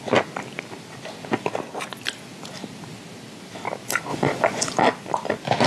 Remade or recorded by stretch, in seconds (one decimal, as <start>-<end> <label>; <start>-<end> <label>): 0.0-4.1 recorded; 4.1-4.8 remade; 4.8-5.7 recorded